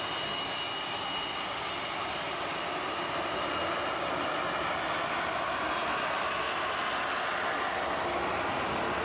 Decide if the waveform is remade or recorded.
recorded